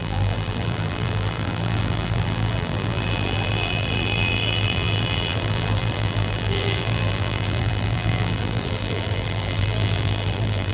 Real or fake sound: fake